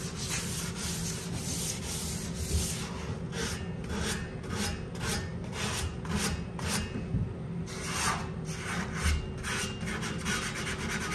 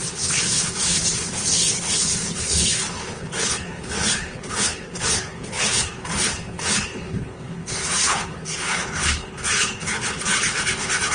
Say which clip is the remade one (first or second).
second